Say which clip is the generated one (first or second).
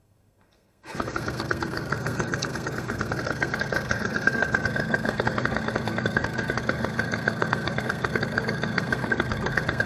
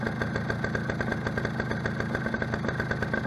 first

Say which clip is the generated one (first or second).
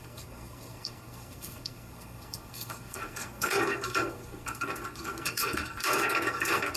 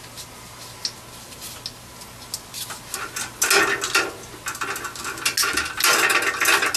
first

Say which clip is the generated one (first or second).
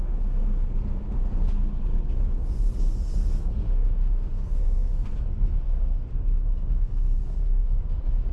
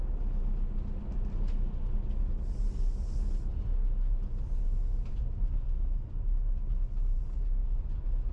first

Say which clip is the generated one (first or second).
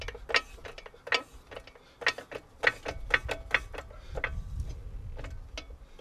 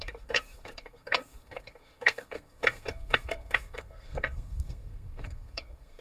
second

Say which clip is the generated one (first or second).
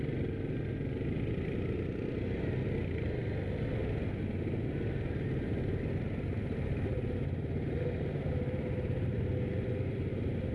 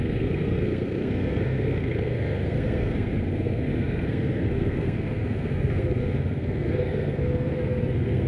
second